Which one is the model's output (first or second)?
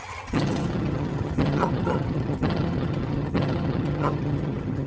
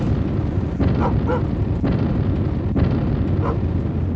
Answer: first